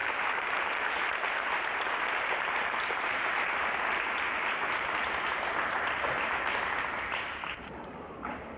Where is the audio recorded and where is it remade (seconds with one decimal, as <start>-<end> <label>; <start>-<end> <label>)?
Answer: 0.0-8.6 remade